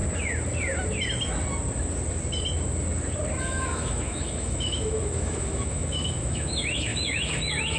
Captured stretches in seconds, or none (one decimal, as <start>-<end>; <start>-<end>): 0.0-3.4

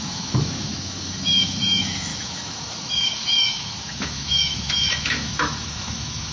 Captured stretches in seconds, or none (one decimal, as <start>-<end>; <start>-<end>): none